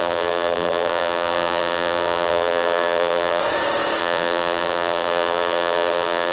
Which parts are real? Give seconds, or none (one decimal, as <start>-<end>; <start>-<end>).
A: 3.4-4.0